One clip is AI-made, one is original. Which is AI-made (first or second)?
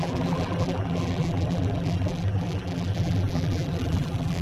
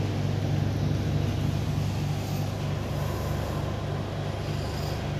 first